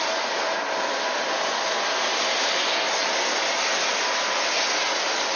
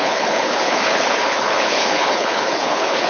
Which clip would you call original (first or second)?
first